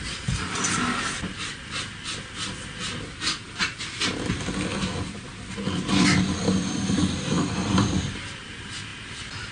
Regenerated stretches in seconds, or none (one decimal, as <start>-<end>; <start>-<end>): none

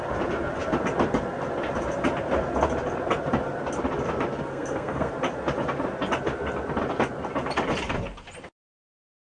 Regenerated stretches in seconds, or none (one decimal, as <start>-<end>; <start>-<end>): 4.5-5.1